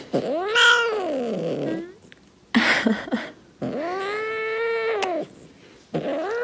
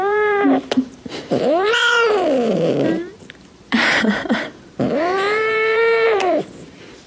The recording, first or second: first